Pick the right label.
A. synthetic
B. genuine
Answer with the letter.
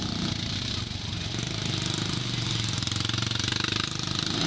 B